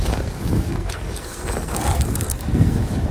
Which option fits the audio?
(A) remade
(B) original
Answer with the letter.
A